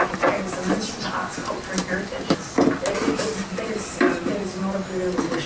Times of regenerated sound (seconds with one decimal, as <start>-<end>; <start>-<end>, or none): none